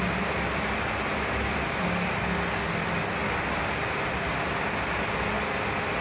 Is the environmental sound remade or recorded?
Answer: recorded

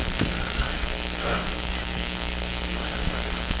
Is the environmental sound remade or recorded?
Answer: remade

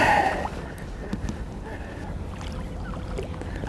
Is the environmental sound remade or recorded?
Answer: recorded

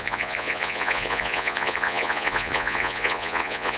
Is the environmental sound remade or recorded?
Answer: remade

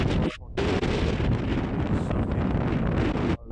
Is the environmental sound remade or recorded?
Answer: recorded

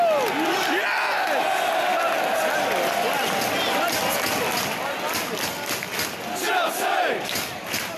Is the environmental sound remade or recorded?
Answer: recorded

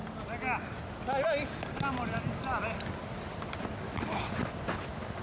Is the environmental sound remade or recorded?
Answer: recorded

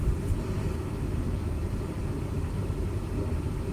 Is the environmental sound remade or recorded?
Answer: recorded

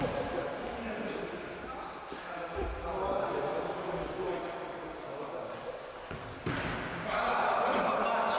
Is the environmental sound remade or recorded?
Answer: recorded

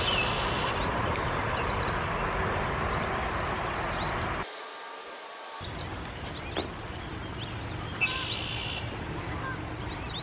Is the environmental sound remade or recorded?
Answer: recorded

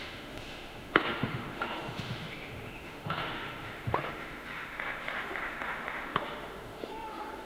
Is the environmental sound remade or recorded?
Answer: remade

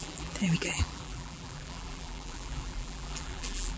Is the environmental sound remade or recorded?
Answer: remade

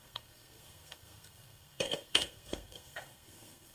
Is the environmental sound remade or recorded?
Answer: remade